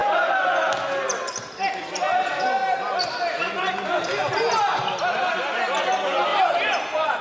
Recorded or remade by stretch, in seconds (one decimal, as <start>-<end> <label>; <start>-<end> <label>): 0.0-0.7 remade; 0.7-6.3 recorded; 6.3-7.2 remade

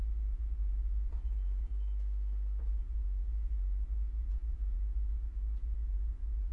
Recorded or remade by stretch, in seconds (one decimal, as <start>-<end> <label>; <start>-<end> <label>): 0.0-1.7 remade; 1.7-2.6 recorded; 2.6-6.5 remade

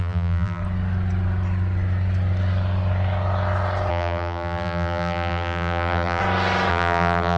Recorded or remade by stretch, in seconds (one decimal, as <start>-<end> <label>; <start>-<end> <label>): 0.0-0.6 remade; 0.6-3.9 recorded; 3.9-6.2 remade; 6.2-6.7 recorded; 6.7-7.4 remade

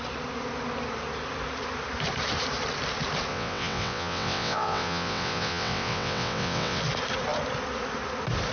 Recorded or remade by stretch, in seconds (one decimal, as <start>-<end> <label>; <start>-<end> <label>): 0.0-3.3 recorded; 3.3-6.8 remade; 6.8-8.5 recorded